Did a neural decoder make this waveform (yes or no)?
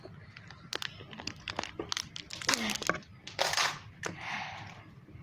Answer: no